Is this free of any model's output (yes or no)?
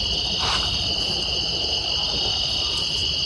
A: yes